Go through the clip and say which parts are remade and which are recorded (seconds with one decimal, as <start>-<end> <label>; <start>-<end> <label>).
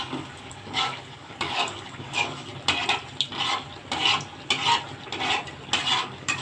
0.0-2.5 remade; 2.5-6.0 recorded; 6.0-6.4 remade